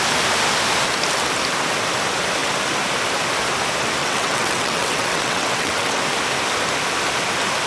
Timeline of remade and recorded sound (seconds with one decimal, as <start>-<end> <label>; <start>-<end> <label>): 0.0-4.0 recorded; 4.0-6.0 remade; 6.0-7.7 recorded